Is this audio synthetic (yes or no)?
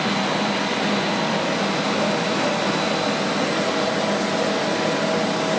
no